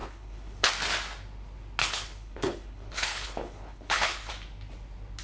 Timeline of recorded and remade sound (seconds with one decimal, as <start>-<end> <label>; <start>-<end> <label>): 0.0-0.7 remade; 0.7-1.8 recorded; 1.8-4.3 remade; 4.3-5.2 recorded